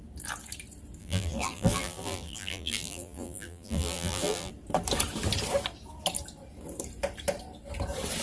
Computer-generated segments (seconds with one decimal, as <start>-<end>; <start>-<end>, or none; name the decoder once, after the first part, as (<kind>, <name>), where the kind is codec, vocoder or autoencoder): 1.0-4.5 (vocoder, BigVGAN v2)